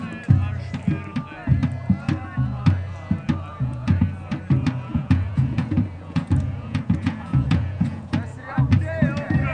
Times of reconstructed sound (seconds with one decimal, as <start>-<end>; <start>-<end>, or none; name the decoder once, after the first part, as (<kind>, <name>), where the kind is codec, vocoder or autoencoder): 3.5-4.0 (vocoder, Vocos); 4.9-8.6